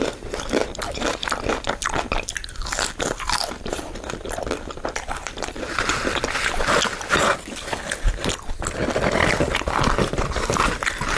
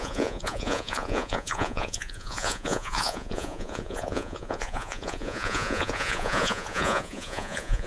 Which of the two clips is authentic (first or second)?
first